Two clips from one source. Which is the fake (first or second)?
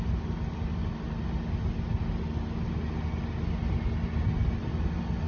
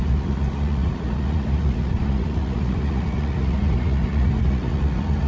second